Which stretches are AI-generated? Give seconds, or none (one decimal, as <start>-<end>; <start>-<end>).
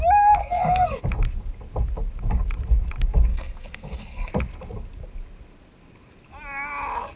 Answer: 0.4-1.0; 3.3-4.3